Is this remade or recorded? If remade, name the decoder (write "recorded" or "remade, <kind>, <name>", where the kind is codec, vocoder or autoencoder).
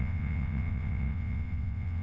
remade, vocoder, WaveNeXt